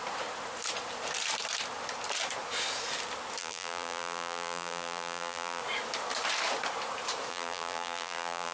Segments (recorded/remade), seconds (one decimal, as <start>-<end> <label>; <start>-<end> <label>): 0.0-3.4 recorded; 3.4-5.6 remade; 5.6-7.3 recorded; 7.3-8.5 remade